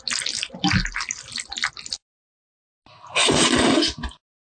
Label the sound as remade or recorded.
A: recorded